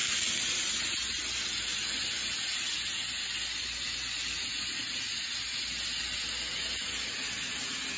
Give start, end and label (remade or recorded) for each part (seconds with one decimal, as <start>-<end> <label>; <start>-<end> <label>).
0.0-8.0 recorded